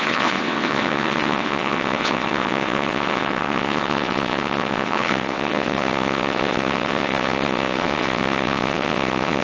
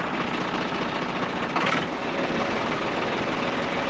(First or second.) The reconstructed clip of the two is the first